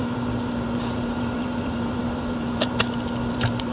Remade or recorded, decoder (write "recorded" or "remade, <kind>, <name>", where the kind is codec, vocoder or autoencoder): remade, vocoder, BigVGAN v2